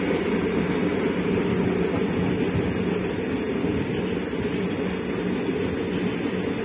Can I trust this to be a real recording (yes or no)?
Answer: yes